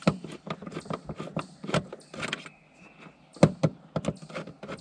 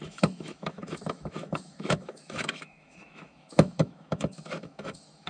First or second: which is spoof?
second